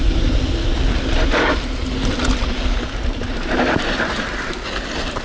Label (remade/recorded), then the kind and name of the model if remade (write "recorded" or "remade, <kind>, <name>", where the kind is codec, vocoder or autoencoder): recorded